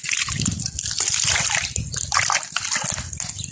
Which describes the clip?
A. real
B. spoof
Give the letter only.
A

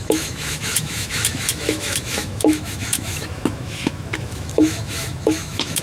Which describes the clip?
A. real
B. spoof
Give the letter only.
B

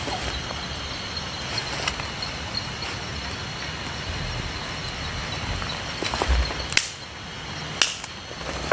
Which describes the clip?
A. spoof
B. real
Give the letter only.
B